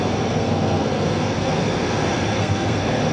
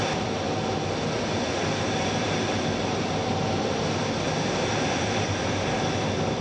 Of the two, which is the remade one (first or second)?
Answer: first